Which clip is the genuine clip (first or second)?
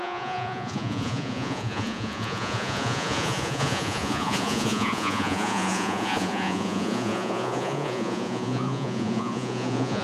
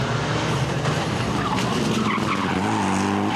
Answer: second